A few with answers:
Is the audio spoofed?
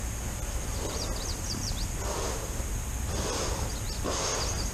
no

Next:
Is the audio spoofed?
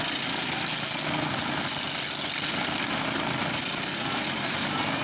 no